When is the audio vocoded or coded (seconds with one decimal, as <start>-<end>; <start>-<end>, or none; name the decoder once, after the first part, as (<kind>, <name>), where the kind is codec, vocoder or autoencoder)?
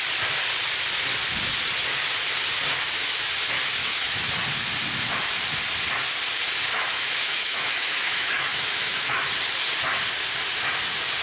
3.8-4.3 (autoencoder, DAC-VAE); 6.7-9.3